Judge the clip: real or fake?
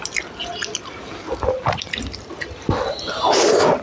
real